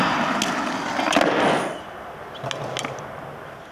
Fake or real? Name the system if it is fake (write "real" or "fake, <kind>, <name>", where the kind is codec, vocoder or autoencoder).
real